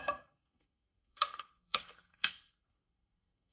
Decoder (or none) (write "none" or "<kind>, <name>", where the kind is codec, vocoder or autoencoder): codec, SNAC